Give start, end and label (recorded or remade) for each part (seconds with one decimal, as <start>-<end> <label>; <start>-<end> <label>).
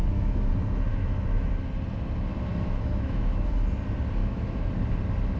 0.0-0.5 remade; 0.5-0.9 recorded; 0.9-1.5 remade; 1.5-2.5 recorded; 2.5-3.5 remade; 3.5-4.2 recorded; 4.2-4.7 remade; 4.7-5.4 recorded